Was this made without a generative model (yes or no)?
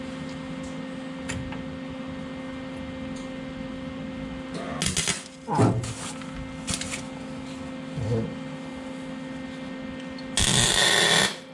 yes